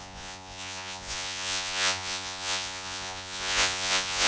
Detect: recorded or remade remade